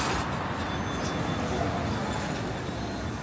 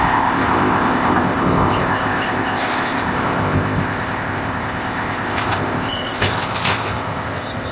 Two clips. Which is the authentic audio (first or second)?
first